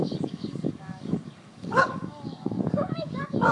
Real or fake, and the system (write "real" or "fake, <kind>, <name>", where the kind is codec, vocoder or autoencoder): fake, codec, DAC